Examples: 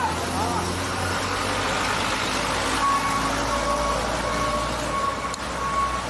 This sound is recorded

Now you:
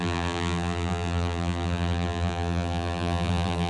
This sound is remade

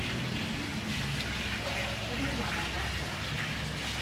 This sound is recorded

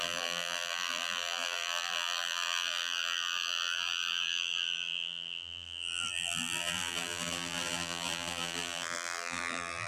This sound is remade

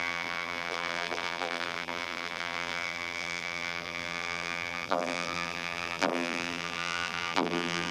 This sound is remade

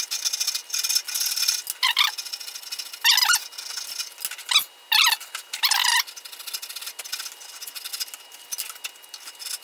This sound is recorded